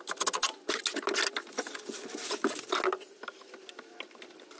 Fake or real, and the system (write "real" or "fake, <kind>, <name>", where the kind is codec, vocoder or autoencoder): real